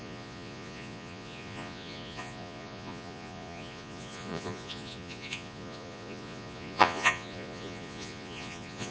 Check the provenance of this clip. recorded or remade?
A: remade